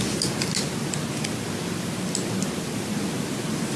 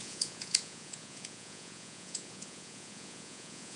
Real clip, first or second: first